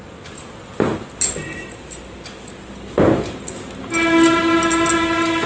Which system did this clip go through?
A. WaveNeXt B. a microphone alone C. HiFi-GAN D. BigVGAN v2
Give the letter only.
B